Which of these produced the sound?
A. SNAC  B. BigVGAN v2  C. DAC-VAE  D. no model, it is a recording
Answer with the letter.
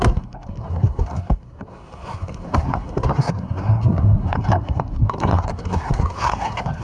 A